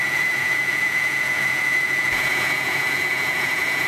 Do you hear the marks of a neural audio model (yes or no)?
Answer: yes